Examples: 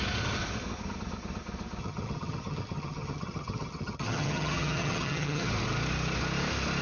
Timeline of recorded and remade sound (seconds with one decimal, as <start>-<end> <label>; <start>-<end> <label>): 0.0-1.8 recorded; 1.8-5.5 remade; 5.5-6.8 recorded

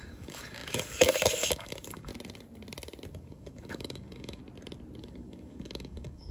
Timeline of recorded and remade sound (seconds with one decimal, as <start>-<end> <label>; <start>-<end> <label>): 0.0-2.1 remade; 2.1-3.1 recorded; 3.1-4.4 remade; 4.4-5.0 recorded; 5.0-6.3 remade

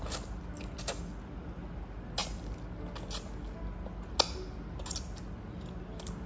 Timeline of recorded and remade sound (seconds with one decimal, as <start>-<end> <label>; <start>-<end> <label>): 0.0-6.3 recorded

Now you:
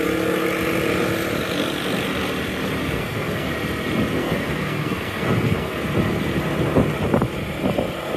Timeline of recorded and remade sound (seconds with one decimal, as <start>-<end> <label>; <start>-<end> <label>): 0.0-2.8 recorded; 2.8-3.5 remade; 3.5-4.2 recorded; 4.2-5.8 remade; 5.8-8.2 recorded